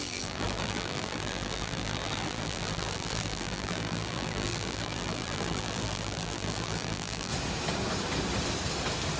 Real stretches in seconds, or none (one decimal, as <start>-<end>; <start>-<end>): 7.3-9.2